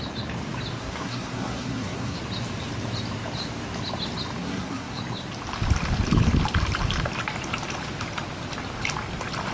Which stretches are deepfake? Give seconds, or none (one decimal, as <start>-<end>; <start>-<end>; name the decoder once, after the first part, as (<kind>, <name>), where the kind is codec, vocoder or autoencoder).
0.8-2.2 (codec, SNAC); 4.4-5.0